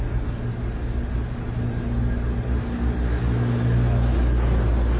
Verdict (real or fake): real